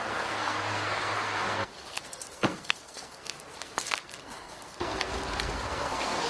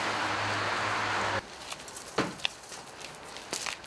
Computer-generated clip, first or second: first